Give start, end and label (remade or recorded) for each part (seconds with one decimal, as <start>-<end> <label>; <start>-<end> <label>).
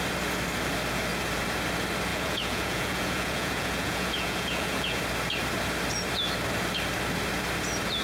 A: 0.0-2.1 recorded; 2.1-5.0 remade; 5.0-8.0 recorded